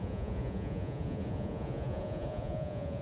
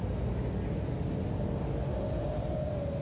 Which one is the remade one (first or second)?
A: first